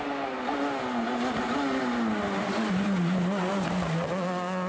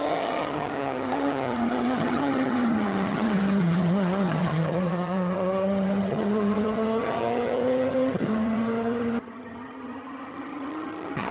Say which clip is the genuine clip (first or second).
first